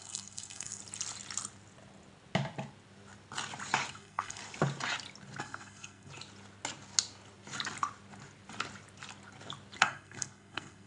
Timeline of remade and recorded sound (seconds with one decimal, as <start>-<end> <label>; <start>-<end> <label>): 0.0-0.8 remade; 0.8-3.9 recorded; 3.9-4.4 remade; 4.4-5.4 recorded; 5.4-6.1 remade; 6.1-9.8 recorded; 9.8-10.9 remade